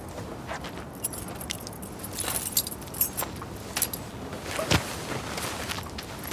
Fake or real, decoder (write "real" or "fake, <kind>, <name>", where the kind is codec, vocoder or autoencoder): real